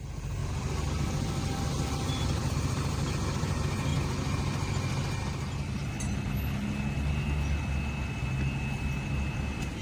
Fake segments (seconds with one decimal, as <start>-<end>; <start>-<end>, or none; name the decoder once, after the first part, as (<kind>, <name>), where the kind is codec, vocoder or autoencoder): 0.4-2.5 (vocoder, BigVGAN v2)